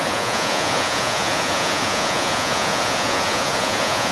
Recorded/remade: remade